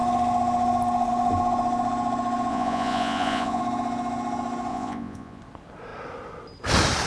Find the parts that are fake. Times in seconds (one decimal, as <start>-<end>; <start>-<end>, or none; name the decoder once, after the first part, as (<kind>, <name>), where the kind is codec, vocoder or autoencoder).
2.5-3.6 (vocoder, Vocos); 4.7-5.4